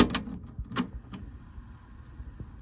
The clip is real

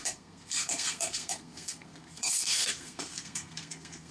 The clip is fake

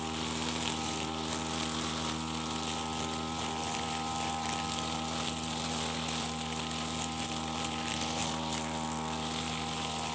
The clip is real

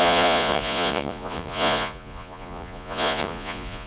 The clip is fake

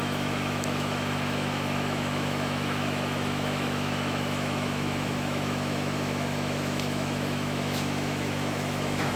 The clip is fake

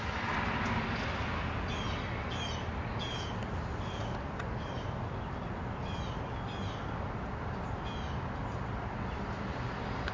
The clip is real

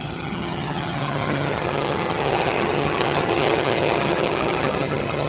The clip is fake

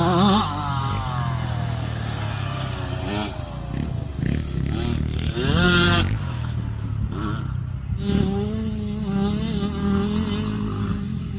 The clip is real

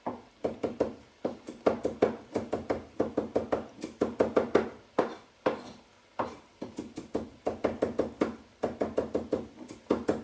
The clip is real